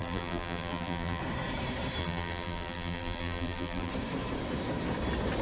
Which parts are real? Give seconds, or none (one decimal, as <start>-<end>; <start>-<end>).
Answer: 1.2-2.0; 3.9-5.4